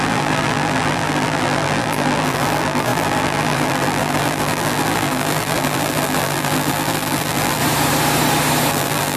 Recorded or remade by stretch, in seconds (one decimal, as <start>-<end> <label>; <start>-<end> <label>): 0.0-7.6 remade; 7.6-8.7 recorded; 8.7-9.2 remade